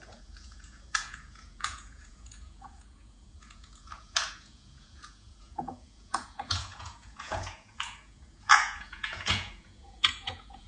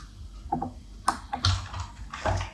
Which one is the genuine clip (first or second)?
second